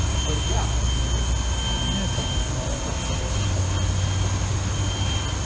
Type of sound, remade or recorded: recorded